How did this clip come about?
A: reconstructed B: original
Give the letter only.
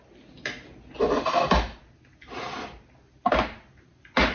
B